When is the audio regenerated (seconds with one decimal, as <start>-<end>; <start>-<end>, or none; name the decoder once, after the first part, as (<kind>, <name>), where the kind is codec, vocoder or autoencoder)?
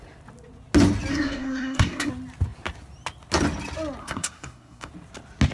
1.1-2.1 (codec, SNAC); 4.0-4.9